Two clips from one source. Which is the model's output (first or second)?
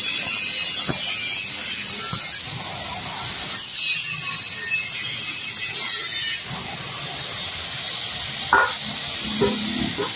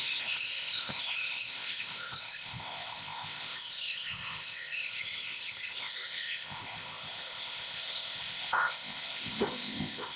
second